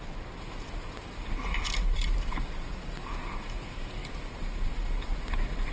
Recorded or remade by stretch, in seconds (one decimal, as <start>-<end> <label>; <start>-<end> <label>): 0.0-5.7 recorded